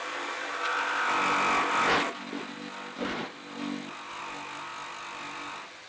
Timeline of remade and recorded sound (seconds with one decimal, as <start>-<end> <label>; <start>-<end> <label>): 0.0-5.9 recorded